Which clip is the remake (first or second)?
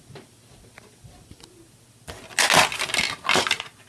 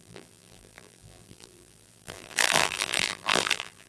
second